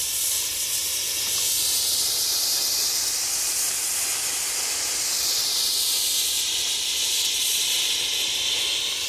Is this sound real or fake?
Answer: real